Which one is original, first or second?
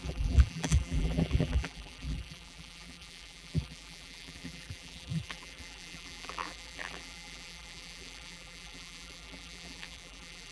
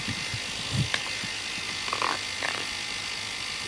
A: second